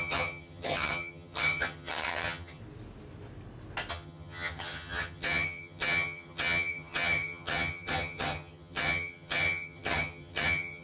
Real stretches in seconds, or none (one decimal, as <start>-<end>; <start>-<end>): 2.6-3.9